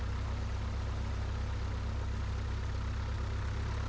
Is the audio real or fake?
real